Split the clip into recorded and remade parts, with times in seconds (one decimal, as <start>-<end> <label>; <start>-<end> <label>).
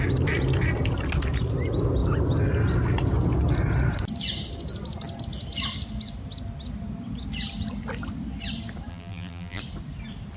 0.0-8.9 recorded; 8.9-9.6 remade; 9.6-10.4 recorded